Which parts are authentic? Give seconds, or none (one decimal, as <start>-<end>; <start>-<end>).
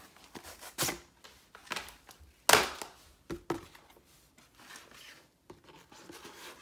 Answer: 0.0-6.6